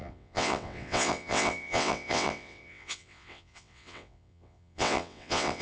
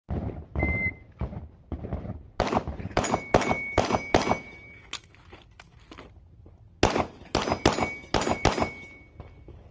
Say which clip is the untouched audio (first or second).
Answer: second